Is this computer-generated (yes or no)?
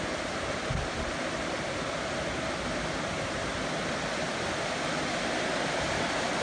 no